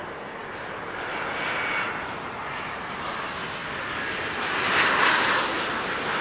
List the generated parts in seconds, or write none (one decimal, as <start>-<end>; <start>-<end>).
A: none